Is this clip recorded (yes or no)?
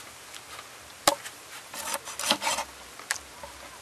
yes